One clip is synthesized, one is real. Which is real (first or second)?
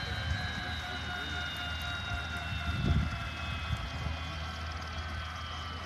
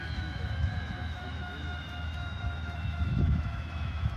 first